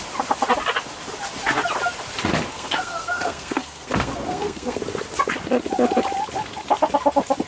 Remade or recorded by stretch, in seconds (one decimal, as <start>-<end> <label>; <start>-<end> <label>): 0.0-2.5 recorded; 2.5-4.8 remade; 4.8-7.5 recorded

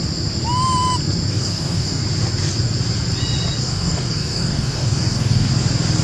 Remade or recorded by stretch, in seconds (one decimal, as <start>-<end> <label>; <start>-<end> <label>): 0.0-1.3 recorded; 1.3-2.0 remade; 2.0-3.6 recorded; 3.6-5.5 remade; 5.5-6.0 recorded

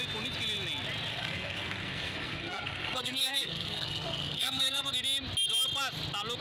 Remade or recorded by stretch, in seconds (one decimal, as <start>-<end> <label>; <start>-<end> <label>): 0.0-1.1 recorded; 1.1-4.9 remade; 4.9-6.4 recorded